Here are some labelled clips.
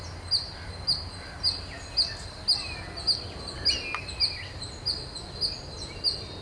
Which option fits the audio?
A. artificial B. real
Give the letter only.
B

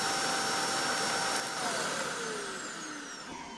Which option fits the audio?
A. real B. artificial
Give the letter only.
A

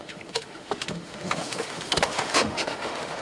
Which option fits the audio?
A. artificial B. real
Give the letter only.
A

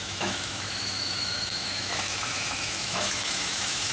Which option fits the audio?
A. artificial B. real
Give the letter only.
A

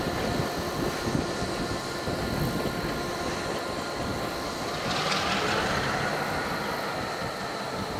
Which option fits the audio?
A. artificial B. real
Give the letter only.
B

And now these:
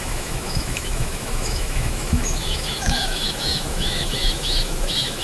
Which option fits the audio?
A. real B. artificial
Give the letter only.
B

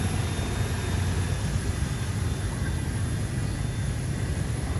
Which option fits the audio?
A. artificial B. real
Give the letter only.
B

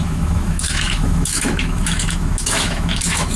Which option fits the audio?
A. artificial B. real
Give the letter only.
A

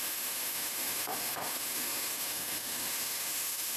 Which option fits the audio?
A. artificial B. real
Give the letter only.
A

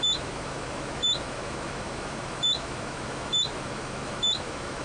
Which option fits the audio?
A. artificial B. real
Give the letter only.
A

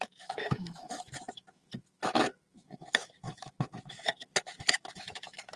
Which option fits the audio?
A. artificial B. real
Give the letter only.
A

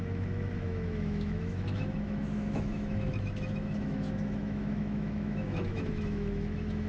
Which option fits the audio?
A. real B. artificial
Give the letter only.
B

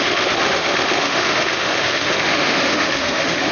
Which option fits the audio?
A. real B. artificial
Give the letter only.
B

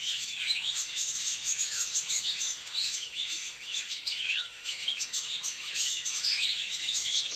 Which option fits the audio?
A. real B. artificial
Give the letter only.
B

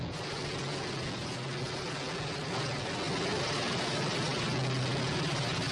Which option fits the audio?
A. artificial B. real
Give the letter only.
B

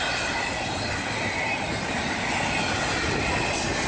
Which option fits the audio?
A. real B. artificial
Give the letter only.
A